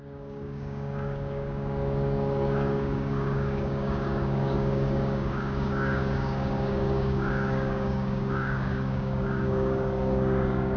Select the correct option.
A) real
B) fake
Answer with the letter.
B